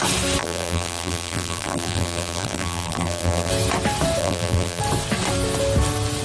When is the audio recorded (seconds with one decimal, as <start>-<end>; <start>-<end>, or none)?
0.0-0.4; 3.5-4.2; 4.8-6.2